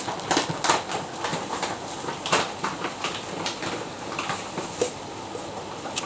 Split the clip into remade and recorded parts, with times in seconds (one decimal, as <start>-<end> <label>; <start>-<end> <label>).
0.0-1.3 recorded; 1.3-5.0 remade; 5.0-6.1 recorded